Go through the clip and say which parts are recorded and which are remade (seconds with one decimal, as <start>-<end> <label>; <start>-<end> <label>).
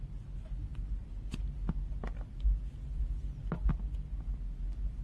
0.0-5.0 recorded